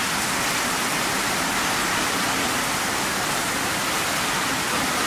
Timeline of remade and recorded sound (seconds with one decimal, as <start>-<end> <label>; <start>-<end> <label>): 0.0-5.1 recorded